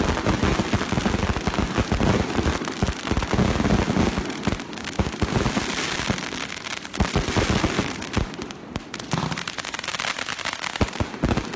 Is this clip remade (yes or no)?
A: no